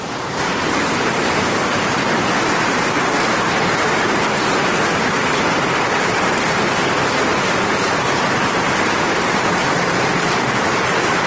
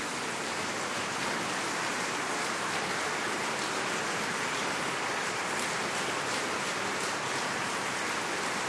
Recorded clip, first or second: second